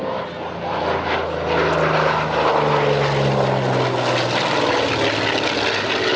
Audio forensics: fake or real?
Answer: real